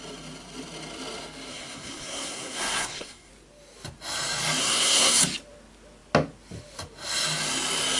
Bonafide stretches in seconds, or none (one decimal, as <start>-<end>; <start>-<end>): 0.0-1.5; 3.3-4.6; 5.2-8.0